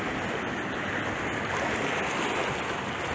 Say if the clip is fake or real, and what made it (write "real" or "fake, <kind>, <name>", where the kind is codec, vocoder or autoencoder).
real